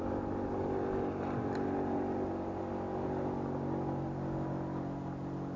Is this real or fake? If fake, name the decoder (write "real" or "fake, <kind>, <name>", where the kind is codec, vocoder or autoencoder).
real